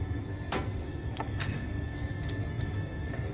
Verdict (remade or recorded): remade